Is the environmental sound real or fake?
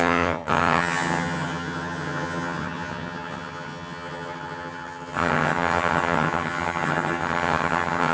fake